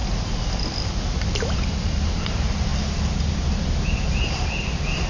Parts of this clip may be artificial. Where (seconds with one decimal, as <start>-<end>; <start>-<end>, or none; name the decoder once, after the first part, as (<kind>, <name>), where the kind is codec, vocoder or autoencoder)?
1.0-2.7 (vocoder, BigVGAN v2)